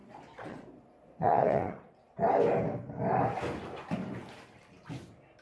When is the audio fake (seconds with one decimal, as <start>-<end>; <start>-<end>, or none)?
0.0-1.9